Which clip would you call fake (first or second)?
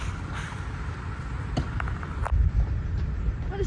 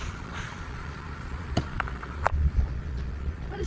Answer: second